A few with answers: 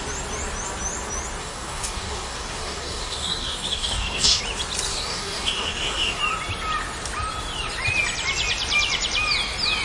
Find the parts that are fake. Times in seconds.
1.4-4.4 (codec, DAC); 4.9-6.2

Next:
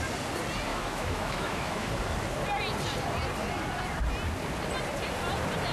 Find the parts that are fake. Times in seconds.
0.7-1.9 (autoencoder, DAC-VAE)

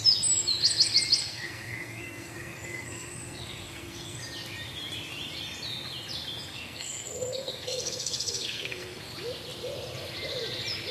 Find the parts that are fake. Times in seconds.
1.2-4.2 (codec, SNAC); 6.5-9.0

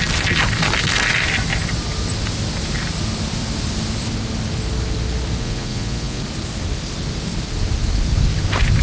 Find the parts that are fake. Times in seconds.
5.4-6.2 (vocoder, Vocos)

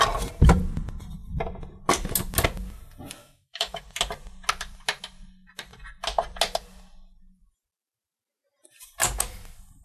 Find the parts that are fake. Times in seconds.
3.2-3.8 (autoencoder, DAC-VAE)